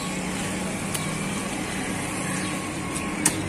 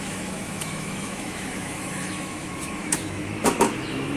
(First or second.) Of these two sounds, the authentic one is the first